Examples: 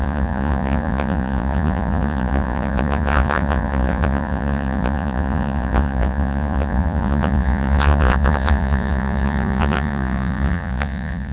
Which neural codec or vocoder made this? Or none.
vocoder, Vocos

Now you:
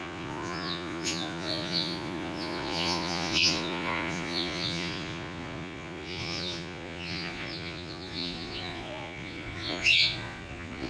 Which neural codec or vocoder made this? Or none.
vocoder, Vocos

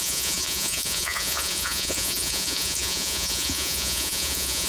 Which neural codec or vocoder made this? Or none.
vocoder, Vocos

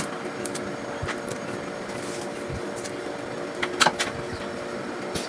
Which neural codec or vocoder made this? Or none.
none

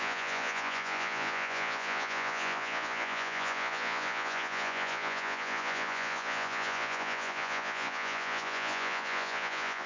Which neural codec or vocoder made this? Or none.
vocoder, Vocos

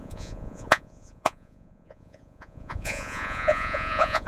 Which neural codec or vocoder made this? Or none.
vocoder, Vocos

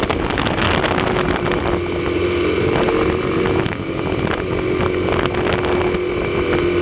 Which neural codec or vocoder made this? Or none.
none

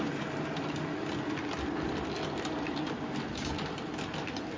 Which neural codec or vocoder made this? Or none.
none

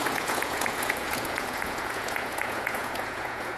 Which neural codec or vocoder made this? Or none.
vocoder, Vocos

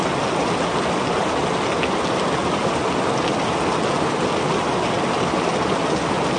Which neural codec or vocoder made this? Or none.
none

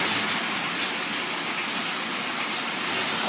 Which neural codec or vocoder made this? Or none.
none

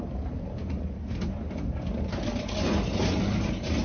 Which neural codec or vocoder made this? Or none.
none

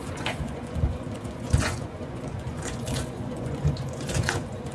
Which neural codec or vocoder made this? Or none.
vocoder, Vocos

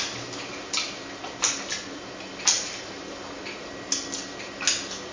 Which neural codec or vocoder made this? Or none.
none